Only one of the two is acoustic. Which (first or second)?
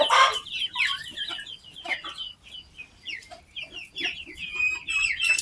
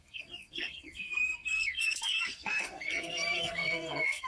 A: first